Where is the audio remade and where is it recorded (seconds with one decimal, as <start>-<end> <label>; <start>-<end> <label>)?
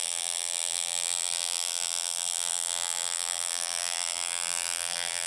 0.0-5.3 remade